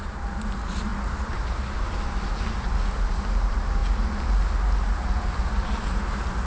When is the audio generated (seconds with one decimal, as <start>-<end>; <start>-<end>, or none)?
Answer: none